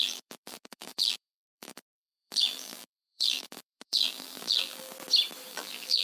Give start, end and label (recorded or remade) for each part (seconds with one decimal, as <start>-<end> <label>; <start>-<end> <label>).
0.0-4.9 remade; 4.9-5.5 recorded; 5.5-6.0 remade